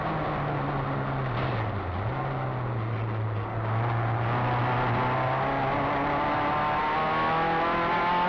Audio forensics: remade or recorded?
recorded